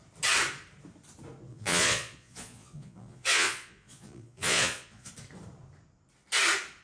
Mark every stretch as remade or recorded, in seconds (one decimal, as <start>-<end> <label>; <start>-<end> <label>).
0.0-1.5 recorded; 1.5-5.1 remade; 5.1-6.8 recorded